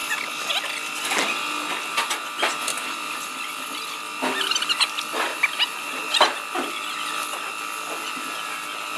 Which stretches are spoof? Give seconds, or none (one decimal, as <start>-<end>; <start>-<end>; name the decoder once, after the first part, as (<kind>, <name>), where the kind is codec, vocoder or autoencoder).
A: 5.3-6.0 (vocoder, BigVGAN v2)